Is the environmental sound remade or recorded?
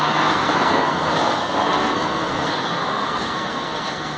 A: remade